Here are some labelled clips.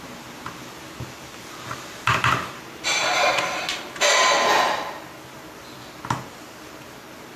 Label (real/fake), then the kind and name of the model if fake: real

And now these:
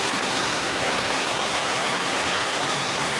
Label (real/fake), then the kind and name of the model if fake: fake, codec, SNAC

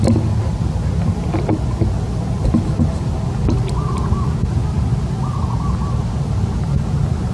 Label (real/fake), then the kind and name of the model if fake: real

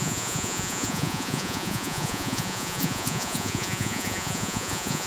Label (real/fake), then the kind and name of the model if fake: fake, vocoder, Vocos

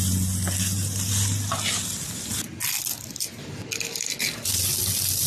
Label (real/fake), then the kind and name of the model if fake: real